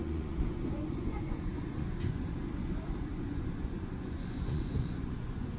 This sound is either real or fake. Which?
fake